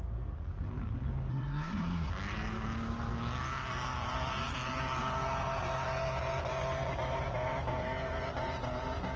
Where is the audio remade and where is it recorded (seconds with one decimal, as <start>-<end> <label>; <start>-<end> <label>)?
0.0-1.3 recorded; 1.3-2.1 remade; 2.1-9.2 recorded